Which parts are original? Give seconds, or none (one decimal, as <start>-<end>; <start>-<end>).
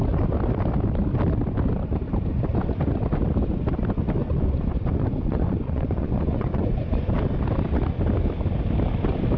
0.0-4.2; 7.1-9.4